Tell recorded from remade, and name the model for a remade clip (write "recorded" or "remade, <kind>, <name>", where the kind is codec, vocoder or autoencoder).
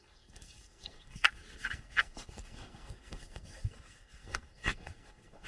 remade, codec, SNAC